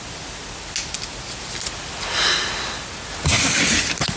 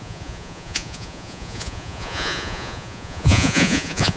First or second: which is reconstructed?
second